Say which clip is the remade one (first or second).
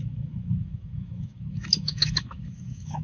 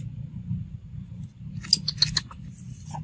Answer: first